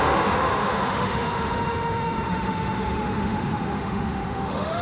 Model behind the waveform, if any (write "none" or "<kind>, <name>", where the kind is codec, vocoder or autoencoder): autoencoder, DAC-VAE